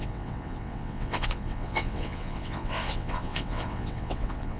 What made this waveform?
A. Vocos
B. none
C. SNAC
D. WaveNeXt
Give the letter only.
D